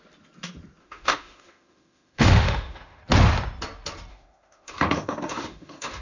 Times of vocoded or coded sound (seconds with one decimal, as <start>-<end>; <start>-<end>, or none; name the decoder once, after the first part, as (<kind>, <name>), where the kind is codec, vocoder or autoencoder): 0.8-3.0 (autoencoder, DAC-VAE); 4.1-6.0